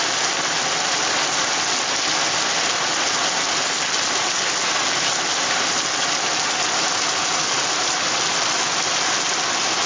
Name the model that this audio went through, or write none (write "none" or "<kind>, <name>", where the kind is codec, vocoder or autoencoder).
none